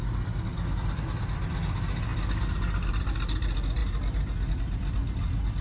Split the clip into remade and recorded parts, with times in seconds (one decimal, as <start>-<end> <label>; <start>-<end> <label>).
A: 0.0-5.6 recorded

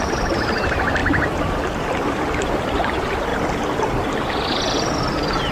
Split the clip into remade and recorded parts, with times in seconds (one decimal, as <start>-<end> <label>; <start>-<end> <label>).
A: 0.0-1.0 recorded; 1.0-1.8 remade; 1.8-5.5 recorded

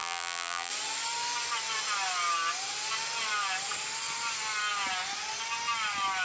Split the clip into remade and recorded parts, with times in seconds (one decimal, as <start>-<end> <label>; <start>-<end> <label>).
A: 0.0-0.7 remade; 0.7-6.2 recorded